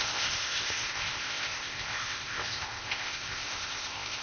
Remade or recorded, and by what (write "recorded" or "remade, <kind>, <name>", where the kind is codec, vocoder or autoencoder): remade, codec, ZipCodec